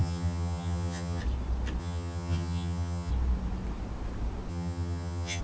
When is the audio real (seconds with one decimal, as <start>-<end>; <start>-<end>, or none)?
1.2-1.8; 3.1-4.5